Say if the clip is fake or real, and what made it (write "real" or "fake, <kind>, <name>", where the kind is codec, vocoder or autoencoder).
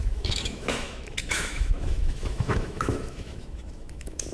fake, autoencoder, DAC-VAE